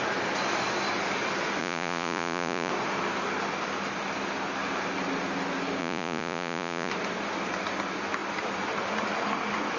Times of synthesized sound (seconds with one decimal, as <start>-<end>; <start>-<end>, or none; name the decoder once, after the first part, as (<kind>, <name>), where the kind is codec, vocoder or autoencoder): 1.6-2.7 (vocoder, Vocos); 5.8-6.9